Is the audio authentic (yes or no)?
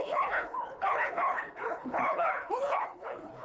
no